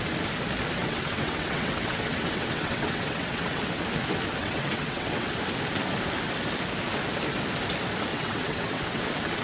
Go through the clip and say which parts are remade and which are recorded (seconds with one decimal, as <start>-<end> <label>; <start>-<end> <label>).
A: 0.0-0.8 recorded; 0.8-3.6 remade; 3.6-4.4 recorded; 4.4-5.3 remade; 5.3-8.1 recorded; 8.1-9.0 remade; 9.0-9.4 recorded